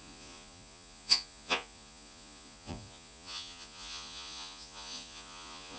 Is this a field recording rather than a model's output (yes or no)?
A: no